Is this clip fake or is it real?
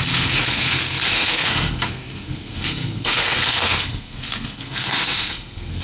fake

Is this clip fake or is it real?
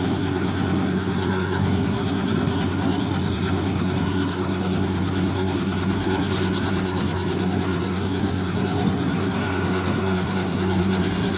fake